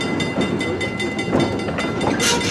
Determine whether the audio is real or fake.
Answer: real